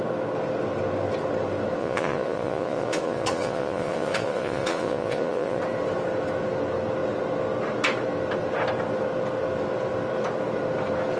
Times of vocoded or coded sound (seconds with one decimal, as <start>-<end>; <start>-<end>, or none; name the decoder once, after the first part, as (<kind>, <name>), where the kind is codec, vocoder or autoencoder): 1.8-5.6 (vocoder, Vocos)